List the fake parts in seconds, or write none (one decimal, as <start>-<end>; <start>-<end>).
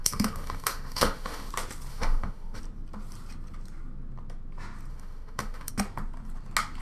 0.0-1.5; 1.9-2.6; 4.9-5.7